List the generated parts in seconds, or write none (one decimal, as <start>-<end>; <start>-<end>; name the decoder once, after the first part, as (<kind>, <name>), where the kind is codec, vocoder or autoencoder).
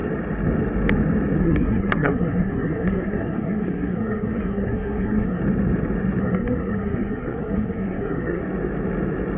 1.4-5.4 (codec, SNAC); 6.2-8.4